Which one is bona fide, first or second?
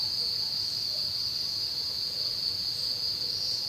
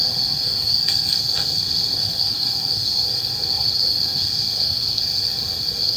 first